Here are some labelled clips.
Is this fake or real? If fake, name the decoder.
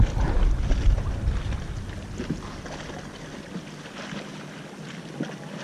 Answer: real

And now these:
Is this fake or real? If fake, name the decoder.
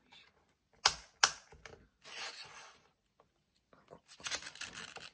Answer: real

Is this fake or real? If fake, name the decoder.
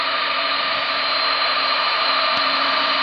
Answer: fake, vocoder, BigVGAN v2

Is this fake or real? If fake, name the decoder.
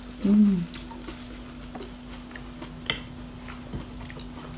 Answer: real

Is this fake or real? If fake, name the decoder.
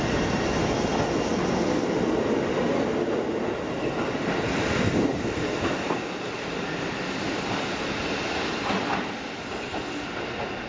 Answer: real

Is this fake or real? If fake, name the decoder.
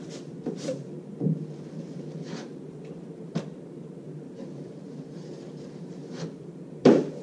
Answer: fake, vocoder, BigVGAN v2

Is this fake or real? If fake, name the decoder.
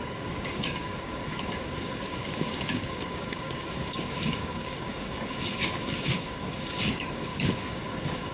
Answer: fake, codec, DAC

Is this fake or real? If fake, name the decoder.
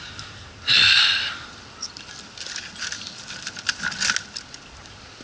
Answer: real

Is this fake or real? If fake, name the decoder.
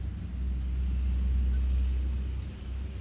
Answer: real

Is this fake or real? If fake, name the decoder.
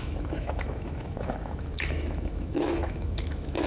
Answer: fake, autoencoder, DAC-VAE